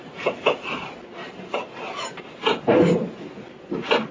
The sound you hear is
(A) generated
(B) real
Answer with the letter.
B